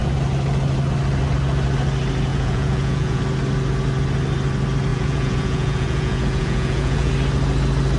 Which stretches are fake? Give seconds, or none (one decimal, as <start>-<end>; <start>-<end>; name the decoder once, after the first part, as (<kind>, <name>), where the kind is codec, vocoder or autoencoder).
2.3-3.2 (vocoder, Vocos); 4.9-7.1